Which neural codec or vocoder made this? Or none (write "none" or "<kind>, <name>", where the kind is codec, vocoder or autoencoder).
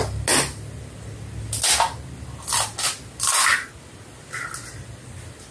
none